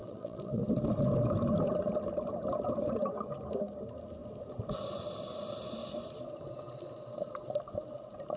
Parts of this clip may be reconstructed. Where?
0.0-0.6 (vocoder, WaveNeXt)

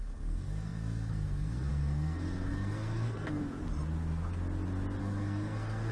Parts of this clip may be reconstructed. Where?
0.0-3.4 (codec, SNAC); 5.0-5.9

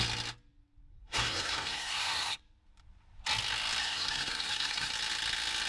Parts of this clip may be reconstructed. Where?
0.9-2.4 (codec, SNAC); 3.8-4.9

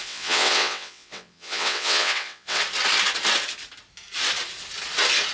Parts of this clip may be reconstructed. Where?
0.0-2.6 (vocoder, WaveNeXt)

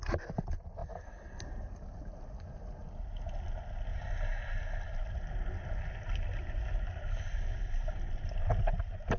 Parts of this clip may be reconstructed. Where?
none

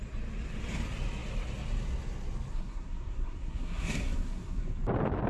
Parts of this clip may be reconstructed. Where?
2.5-4.6 (codec, SNAC)

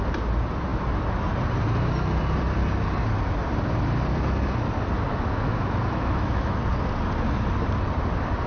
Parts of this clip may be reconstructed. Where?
5.1-6.6 (autoencoder, DAC-VAE)

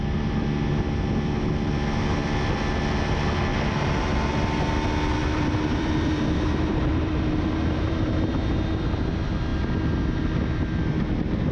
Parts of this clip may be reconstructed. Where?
3.5-4.3 (vocoder, BigVGAN v2); 5.2-8.7